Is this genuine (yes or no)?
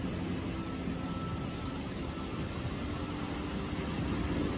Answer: yes